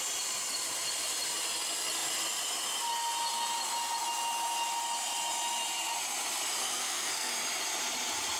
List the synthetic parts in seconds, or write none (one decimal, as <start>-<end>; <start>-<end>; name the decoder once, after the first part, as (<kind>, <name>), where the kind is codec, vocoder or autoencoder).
6.6-7.3 (codec, SNAC)